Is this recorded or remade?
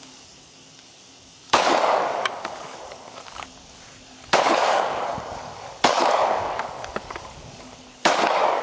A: remade